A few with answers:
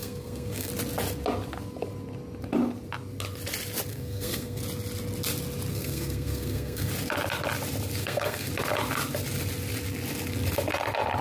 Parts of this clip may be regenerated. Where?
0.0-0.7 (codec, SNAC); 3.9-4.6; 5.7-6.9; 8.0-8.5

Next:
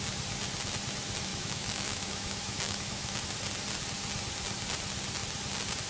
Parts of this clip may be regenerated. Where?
1.3-3.2 (autoencoder, DAC-VAE)